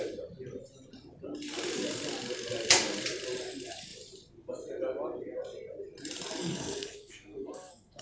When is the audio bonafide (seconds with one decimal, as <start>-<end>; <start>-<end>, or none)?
0.0-6.4